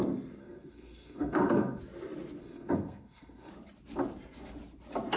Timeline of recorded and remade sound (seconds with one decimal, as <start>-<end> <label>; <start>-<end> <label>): 0.0-0.4 recorded; 0.4-1.8 remade; 1.8-2.4 recorded; 2.4-3.5 remade; 3.5-5.2 recorded